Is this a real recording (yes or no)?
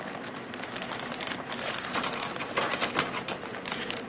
yes